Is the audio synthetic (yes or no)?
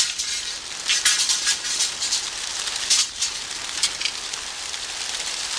no